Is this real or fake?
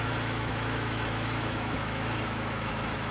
fake